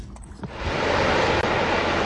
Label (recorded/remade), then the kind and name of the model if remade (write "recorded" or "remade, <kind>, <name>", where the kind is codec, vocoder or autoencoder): recorded